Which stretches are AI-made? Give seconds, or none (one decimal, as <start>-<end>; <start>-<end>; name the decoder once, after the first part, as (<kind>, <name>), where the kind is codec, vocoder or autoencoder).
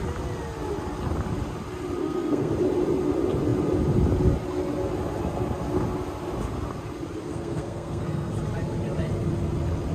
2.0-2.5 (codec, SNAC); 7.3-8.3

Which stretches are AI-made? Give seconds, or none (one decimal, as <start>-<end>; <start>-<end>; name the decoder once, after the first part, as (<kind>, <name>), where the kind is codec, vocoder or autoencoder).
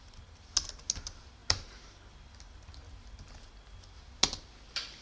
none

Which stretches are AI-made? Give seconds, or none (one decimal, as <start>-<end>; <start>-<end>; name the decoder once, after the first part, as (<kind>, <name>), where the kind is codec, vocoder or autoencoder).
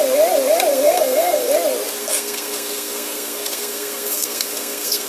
0.7-1.5 (codec, SNAC); 2.0-5.1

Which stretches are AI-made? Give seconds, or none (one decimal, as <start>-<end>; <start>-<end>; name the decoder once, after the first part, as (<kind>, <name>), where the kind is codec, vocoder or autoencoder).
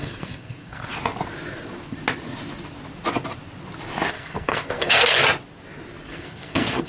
0.0-0.9 (codec, SNAC); 4.1-5.2; 6.1-6.9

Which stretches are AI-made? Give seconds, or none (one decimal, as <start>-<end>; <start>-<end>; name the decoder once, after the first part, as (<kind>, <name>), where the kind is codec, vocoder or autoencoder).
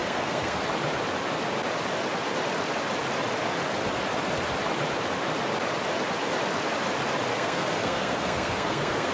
0.0-0.6 (codec, SNAC); 7.3-9.1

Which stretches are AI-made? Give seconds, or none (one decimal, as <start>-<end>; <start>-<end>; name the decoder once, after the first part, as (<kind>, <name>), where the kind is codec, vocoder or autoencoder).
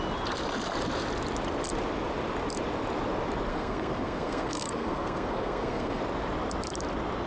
3.5-6.0 (codec, SNAC)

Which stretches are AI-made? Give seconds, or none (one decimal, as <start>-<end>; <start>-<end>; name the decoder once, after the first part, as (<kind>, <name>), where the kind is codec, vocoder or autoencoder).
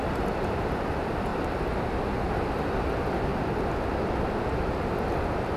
none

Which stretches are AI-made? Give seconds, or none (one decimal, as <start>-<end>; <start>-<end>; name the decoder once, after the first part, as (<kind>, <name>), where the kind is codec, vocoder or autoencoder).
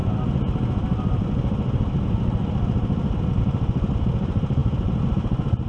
none